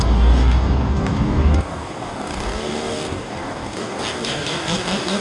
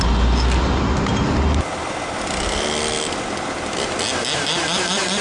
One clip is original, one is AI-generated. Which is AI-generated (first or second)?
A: first